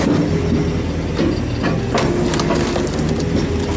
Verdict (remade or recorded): recorded